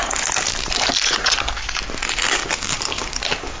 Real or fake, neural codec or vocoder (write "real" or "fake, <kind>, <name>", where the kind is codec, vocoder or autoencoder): real